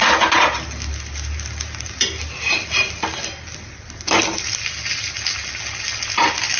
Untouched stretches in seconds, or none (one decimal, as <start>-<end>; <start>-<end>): 0.0-6.6